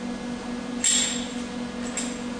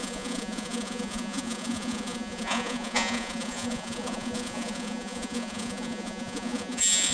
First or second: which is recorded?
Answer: first